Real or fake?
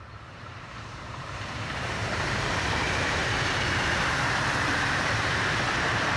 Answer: fake